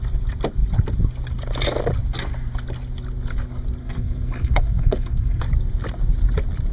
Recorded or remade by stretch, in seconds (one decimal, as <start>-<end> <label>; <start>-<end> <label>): 0.0-3.8 recorded; 3.8-5.4 remade; 5.4-6.7 recorded